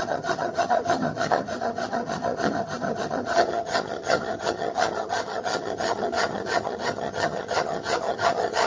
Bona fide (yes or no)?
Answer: no